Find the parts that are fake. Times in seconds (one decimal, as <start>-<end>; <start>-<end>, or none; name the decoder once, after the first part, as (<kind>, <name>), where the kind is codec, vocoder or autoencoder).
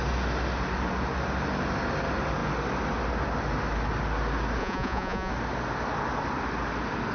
4.6-5.3 (vocoder, Vocos)